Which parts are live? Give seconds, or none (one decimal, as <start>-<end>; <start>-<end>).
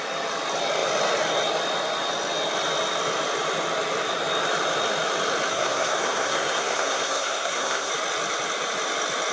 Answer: 0.0-5.5; 7.9-9.3